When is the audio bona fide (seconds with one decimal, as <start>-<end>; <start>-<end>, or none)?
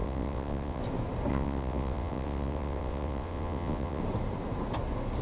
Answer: 0.8-1.3; 4.0-5.2